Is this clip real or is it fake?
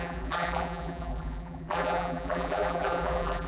fake